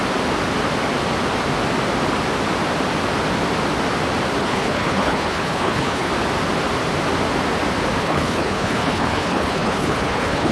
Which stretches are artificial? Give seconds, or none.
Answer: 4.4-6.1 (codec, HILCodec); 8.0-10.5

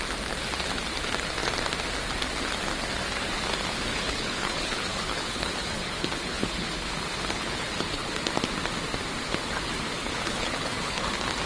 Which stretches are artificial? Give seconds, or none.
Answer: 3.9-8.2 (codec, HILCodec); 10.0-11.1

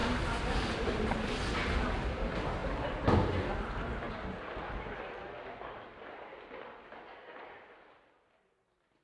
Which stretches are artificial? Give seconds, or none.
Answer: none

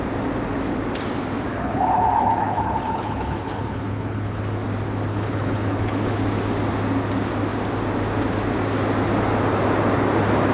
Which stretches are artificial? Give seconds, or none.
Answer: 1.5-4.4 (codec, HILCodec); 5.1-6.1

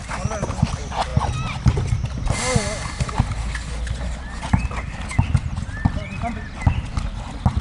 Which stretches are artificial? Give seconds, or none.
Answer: none

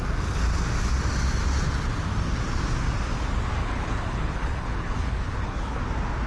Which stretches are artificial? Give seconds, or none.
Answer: 3.6-5.8 (codec, HILCodec)

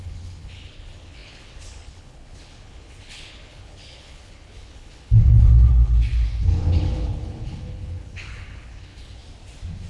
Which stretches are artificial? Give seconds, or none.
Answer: 0.0-9.2 (codec, HILCodec)